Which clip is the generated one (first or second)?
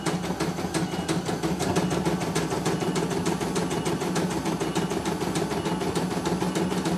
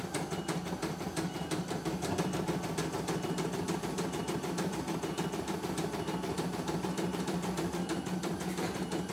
second